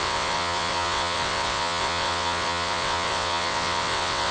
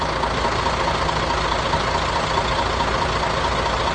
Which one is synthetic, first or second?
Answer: first